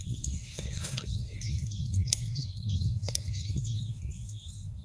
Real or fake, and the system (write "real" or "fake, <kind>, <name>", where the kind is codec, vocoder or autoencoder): fake, codec, SNAC